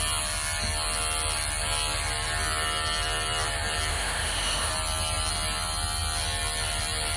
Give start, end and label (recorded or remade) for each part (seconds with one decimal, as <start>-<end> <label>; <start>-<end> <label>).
0.0-3.9 recorded; 3.9-4.7 remade; 4.7-7.2 recorded